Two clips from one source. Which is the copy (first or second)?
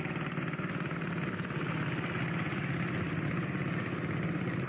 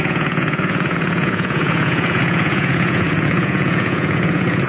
second